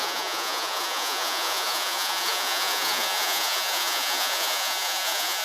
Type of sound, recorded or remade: remade